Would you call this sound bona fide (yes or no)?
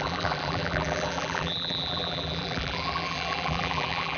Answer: no